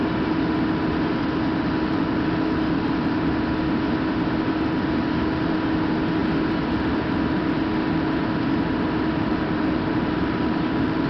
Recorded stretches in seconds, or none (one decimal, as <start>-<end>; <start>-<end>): 0.0-9.3